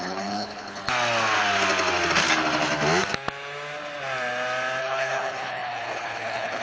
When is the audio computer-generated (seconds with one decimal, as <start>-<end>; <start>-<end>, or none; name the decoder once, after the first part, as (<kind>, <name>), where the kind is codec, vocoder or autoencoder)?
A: 0.0-0.8 (codec, HILCodec); 4.8-6.6